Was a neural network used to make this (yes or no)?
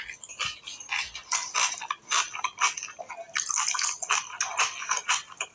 no